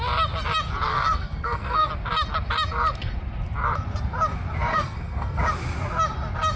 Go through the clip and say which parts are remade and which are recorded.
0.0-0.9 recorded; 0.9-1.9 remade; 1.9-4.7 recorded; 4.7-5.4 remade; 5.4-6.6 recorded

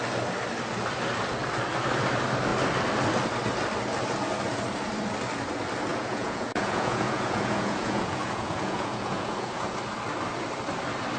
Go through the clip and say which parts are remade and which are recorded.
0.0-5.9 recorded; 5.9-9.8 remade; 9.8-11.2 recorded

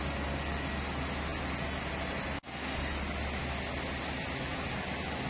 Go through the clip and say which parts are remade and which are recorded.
0.0-5.3 recorded

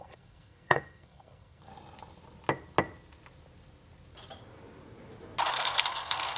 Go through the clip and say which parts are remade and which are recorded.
0.0-1.7 remade; 1.7-5.5 recorded; 5.5-6.4 remade

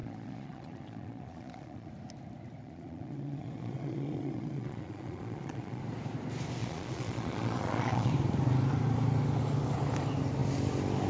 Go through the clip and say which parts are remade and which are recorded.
0.0-1.9 remade; 1.9-2.6 recorded; 2.6-5.8 remade; 5.8-6.6 recorded; 6.6-8.1 remade; 8.1-11.1 recorded

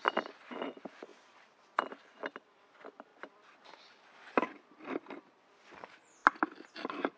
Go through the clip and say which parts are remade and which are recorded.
0.0-1.1 recorded; 1.1-2.2 remade; 2.2-7.2 recorded